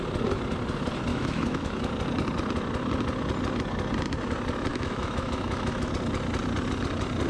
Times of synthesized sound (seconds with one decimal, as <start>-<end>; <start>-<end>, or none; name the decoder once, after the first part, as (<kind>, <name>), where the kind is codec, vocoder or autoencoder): 1.1-1.9 (autoencoder, DAC-VAE); 4.7-5.9